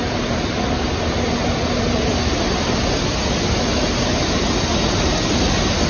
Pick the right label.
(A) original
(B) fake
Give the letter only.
A